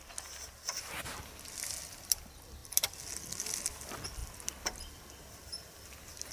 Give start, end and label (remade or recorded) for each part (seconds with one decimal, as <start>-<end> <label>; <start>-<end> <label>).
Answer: 0.0-6.3 recorded